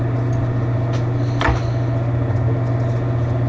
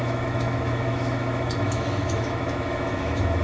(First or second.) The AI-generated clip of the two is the second